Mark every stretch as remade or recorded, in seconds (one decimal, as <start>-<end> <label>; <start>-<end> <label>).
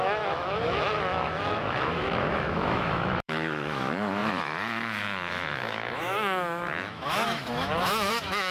0.0-8.5 remade